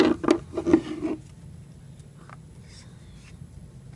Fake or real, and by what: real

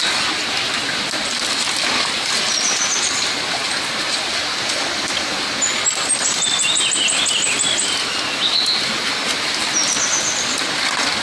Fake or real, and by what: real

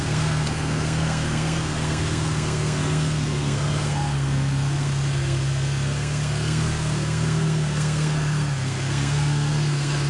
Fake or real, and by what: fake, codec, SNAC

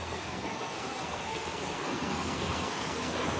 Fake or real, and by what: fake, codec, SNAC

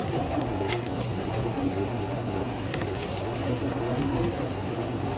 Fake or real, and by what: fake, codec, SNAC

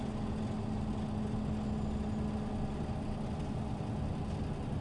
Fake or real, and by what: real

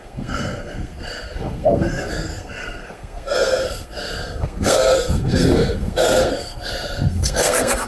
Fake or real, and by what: fake, codec, SNAC